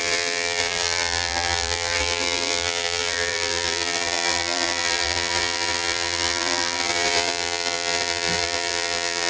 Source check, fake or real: fake